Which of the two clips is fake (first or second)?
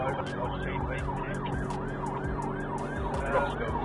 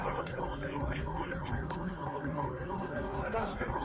second